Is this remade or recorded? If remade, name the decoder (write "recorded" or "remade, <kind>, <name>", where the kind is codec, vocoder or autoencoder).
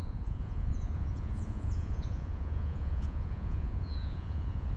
remade, vocoder, Vocos